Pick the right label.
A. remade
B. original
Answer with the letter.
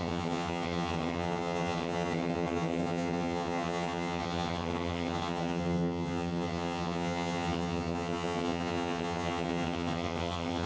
A